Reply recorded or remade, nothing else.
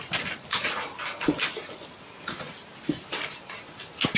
recorded